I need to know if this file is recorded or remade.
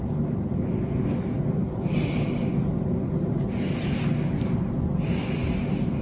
recorded